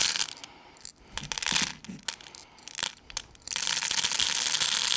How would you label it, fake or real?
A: real